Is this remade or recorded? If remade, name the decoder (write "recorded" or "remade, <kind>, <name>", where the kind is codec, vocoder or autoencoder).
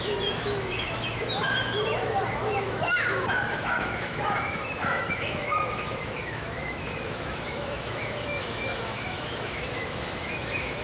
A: remade, autoencoder, DAC-VAE